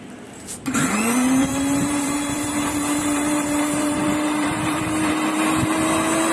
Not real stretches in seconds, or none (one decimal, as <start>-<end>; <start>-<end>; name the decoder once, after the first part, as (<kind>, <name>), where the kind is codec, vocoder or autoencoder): 1.4-5.1 (vocoder, BigVGAN v2)